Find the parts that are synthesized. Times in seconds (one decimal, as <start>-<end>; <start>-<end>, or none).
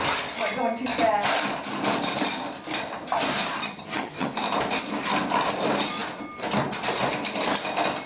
3.6-4.3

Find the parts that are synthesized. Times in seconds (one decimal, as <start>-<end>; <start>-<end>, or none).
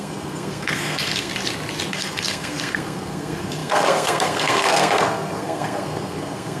0.0-1.3; 1.9-6.6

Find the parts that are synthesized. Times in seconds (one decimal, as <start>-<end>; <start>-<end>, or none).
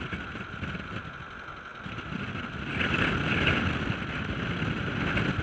none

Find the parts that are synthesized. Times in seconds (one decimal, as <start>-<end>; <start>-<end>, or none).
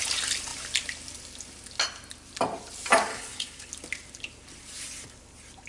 3.1-3.7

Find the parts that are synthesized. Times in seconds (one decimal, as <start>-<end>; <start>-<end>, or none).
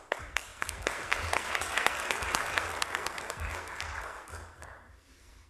0.0-5.5